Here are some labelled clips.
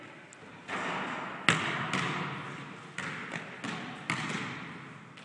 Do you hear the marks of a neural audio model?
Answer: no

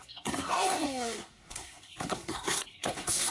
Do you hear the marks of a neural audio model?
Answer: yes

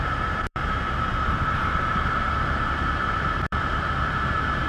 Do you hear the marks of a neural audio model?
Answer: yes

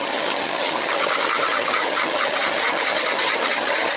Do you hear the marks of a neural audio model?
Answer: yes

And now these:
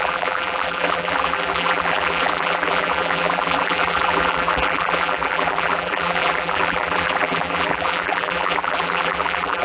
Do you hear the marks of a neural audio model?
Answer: yes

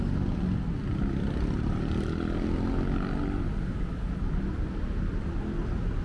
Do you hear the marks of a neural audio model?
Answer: no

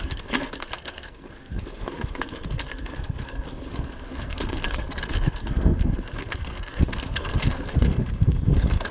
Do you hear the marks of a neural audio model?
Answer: yes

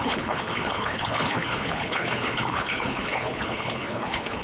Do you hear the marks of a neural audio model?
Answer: yes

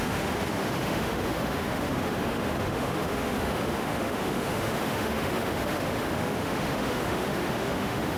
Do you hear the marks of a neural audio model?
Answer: yes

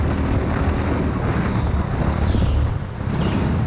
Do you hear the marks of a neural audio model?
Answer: no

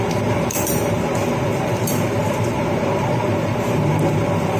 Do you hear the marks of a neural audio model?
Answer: yes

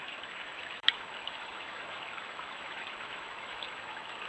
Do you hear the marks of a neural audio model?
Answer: yes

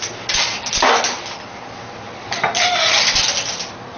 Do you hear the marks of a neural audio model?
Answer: no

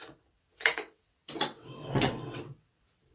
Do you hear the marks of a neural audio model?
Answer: yes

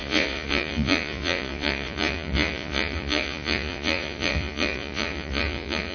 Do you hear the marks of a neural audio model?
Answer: yes